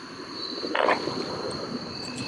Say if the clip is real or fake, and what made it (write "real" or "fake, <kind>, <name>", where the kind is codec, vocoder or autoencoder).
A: fake, vocoder, BigVGAN v2